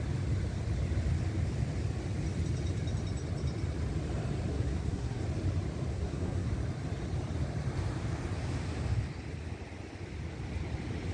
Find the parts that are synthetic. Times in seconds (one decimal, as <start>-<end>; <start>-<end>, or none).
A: 4.5-5.2; 5.9-6.5